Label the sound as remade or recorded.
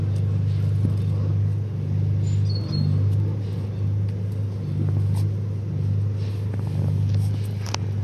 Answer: recorded